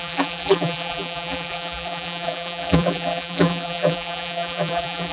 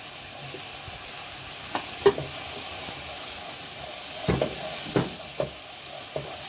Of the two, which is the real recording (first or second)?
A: second